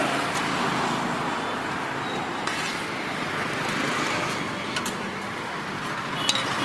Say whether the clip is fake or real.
real